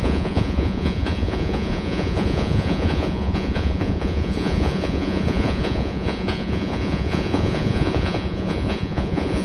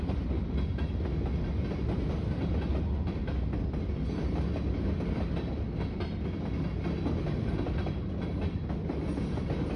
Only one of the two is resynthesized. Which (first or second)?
first